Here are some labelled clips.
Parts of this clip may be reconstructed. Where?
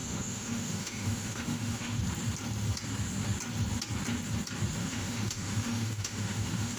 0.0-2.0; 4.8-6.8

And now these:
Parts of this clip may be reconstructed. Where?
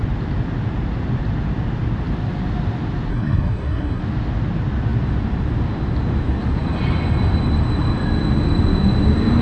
3.1-4.0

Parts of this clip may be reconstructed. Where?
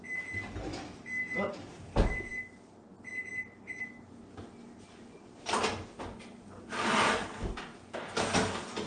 0.7-1.3